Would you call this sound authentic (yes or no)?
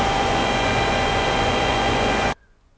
no